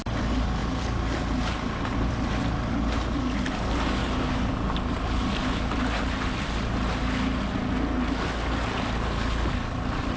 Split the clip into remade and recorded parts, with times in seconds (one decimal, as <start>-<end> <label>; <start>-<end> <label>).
0.0-10.2 recorded